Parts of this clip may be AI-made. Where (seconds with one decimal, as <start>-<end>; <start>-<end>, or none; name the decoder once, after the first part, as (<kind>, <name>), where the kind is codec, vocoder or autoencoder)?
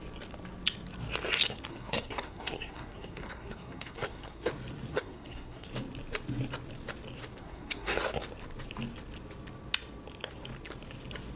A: 1.7-4.5 (codec, SNAC); 4.9-5.7; 7.4-8.0